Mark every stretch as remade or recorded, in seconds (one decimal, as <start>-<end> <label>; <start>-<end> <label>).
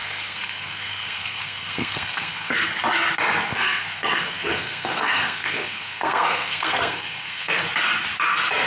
0.0-2.7 remade; 2.7-3.5 recorded; 3.5-7.6 remade; 7.6-8.7 recorded